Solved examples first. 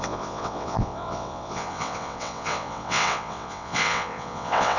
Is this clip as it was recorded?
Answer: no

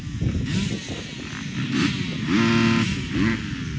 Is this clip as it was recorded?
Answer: yes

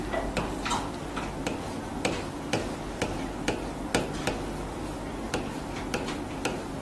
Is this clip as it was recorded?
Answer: yes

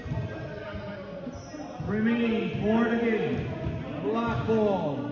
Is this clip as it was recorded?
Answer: yes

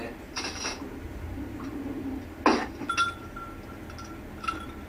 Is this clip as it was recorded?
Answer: yes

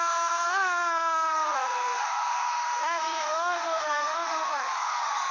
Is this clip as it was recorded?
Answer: no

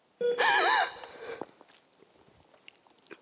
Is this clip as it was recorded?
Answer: yes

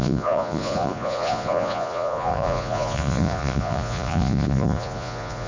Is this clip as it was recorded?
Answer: no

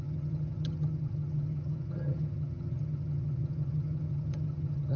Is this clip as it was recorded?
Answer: no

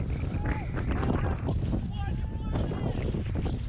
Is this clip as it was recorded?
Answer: yes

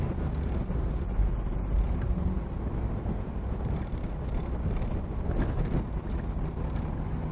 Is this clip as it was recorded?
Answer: yes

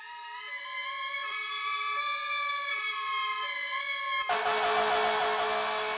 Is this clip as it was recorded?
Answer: yes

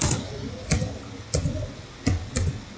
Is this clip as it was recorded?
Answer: yes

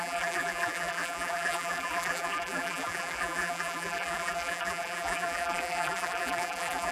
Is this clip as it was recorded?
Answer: no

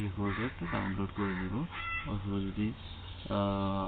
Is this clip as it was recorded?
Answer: no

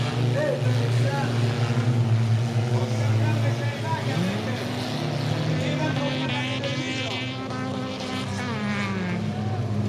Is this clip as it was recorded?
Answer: yes